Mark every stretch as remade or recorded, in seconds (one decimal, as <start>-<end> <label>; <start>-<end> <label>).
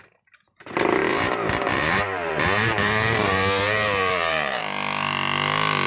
0.0-1.1 recorded; 1.1-4.6 remade; 4.6-5.9 recorded